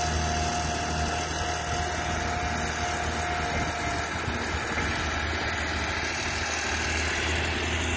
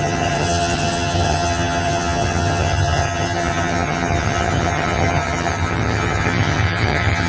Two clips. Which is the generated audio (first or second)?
second